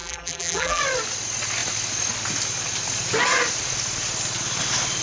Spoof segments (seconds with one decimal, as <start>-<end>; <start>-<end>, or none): 0.0-0.8